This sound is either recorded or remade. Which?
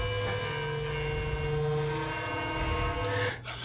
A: recorded